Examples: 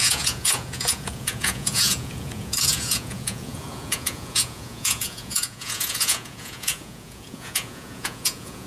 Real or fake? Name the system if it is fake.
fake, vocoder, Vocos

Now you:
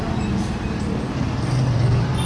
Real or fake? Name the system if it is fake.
real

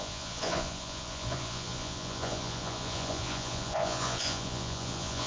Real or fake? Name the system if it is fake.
fake, vocoder, Vocos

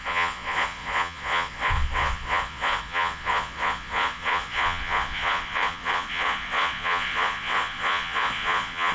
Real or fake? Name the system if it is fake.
fake, vocoder, Vocos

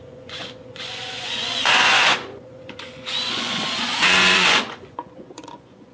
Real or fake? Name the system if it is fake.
fake, vocoder, Vocos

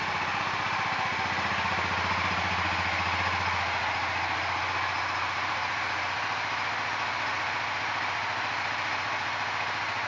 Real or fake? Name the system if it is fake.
real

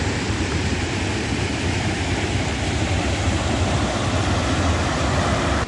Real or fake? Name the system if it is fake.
real